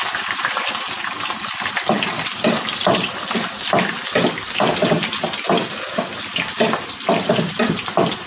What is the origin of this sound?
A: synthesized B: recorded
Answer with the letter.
A